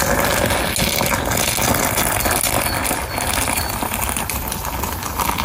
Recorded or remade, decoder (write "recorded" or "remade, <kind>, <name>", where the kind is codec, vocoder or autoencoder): recorded